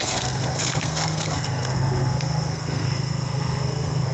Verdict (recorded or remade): remade